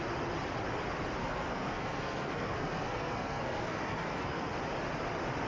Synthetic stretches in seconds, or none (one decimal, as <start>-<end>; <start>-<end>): 1.2-4.5